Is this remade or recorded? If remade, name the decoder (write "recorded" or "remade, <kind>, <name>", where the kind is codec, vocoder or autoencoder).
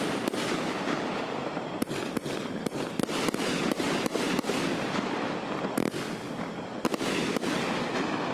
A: recorded